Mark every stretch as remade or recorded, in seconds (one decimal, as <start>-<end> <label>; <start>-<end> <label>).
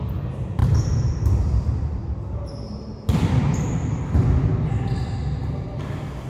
0.0-6.3 recorded